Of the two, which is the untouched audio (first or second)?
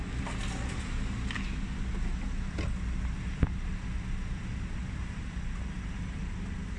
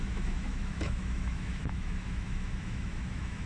first